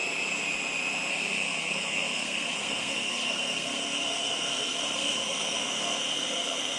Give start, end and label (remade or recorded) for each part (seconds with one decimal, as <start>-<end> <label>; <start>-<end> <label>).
0.0-1.1 recorded; 1.1-6.8 remade